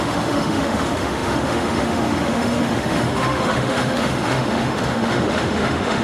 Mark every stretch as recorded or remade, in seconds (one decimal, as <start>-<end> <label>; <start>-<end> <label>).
0.0-6.0 remade